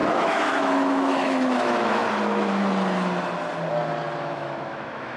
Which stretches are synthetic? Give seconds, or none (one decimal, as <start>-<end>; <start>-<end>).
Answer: 0.0-2.0; 4.2-5.2